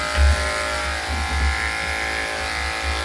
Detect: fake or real real